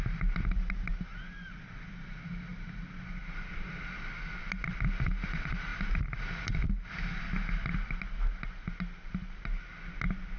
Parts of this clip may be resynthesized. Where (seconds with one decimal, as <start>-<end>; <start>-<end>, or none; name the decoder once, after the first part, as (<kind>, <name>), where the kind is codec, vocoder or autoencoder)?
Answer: none

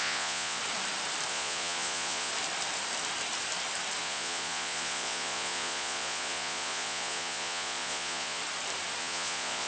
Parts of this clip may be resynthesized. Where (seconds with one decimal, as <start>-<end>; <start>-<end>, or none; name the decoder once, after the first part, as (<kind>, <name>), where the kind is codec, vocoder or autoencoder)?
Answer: 0.0-0.6 (vocoder, Vocos); 1.3-2.3; 4.0-8.4; 9.0-9.7

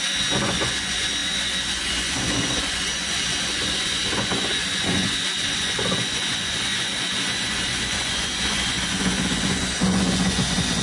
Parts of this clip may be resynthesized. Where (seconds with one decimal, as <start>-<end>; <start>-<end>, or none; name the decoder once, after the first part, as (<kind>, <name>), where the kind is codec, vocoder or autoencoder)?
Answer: 0.0-10.8 (vocoder, Vocos)

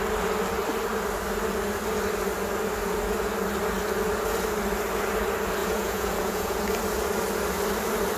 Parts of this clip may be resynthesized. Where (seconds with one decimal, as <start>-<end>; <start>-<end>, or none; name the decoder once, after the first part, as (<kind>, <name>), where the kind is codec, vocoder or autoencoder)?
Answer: 5.6-6.6 (vocoder, Vocos)